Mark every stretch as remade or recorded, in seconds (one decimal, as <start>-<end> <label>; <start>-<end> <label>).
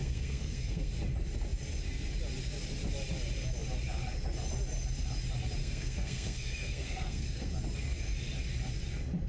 0.0-0.9 remade; 0.9-5.6 recorded; 5.6-7.5 remade; 7.5-9.3 recorded